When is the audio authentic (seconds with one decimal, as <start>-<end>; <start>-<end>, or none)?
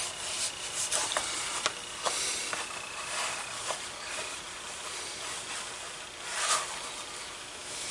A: 0.0-7.2